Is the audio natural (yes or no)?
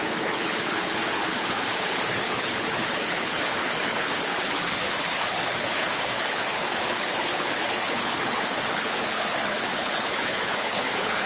no